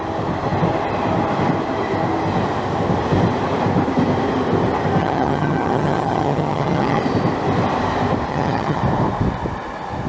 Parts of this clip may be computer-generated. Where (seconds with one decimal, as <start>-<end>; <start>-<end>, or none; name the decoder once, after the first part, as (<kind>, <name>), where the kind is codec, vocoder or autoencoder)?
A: 5.0-7.0 (vocoder, HiFi-GAN); 8.3-8.8